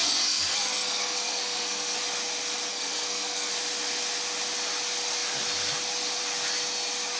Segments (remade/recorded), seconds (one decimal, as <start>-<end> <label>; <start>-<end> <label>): 0.0-2.0 remade; 2.0-2.7 recorded; 2.7-3.5 remade; 3.5-7.2 recorded